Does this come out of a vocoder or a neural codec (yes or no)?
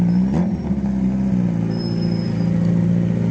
no